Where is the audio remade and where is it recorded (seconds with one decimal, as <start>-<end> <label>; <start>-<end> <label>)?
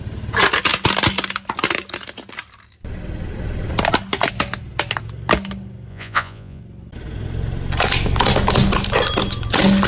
0.0-5.9 recorded; 5.9-6.6 remade; 6.6-9.9 recorded